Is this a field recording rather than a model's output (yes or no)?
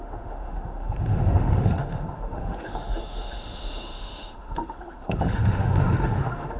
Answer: no